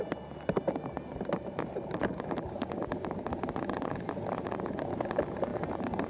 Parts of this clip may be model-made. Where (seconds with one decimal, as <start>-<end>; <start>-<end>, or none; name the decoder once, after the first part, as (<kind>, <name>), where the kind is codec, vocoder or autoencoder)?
1.1-4.8 (vocoder, BigVGAN v2)

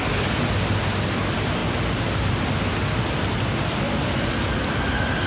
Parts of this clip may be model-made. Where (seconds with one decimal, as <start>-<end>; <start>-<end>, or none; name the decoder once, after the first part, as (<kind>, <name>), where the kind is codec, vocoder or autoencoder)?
none